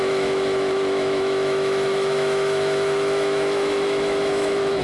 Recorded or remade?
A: remade